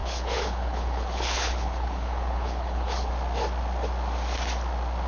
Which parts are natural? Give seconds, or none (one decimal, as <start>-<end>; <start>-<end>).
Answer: 3.1-5.1